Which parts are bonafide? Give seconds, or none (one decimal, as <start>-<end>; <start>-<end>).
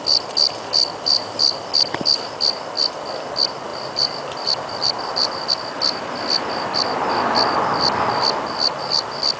0.0-3.7; 5.5-9.4